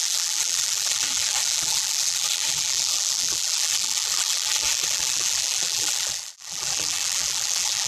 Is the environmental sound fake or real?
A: fake